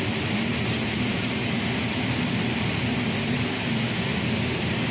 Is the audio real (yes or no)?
yes